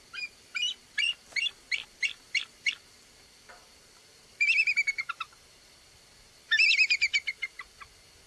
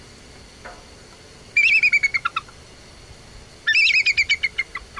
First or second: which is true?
second